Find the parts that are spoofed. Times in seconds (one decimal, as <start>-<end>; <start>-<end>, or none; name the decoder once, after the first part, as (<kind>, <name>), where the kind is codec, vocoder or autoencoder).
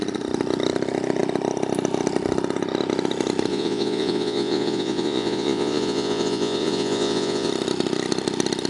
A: 3.5-7.5 (vocoder, Vocos)